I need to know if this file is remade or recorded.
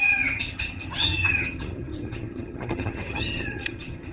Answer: remade